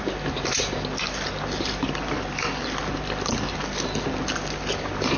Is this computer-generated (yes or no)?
no